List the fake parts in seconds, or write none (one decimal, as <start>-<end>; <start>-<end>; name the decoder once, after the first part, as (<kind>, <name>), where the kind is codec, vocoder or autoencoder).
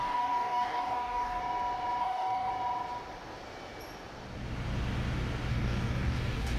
0.0-1.4 (codec, DAC); 2.0-2.5; 5.5-6.6